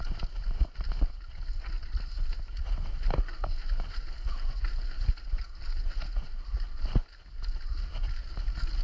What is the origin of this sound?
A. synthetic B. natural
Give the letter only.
B